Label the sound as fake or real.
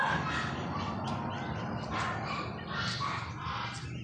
real